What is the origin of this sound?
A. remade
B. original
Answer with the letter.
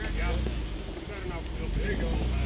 B